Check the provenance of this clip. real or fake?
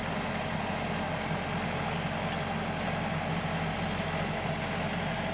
real